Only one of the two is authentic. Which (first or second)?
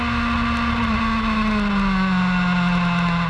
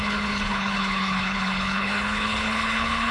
first